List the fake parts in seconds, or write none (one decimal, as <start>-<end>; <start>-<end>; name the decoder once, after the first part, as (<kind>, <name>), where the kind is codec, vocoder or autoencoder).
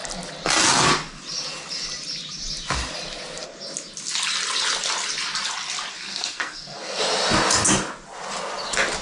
5.9-7.0 (codec, SNAC)